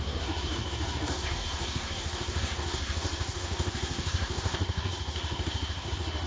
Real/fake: fake